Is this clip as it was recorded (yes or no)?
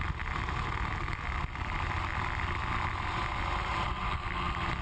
yes